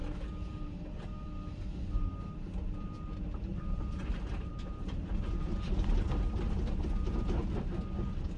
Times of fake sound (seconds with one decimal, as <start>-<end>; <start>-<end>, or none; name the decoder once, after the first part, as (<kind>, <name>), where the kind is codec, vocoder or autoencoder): none